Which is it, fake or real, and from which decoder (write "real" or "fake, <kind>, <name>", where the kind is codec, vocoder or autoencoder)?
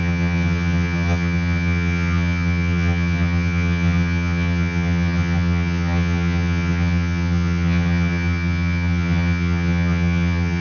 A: fake, vocoder, HiFi-GAN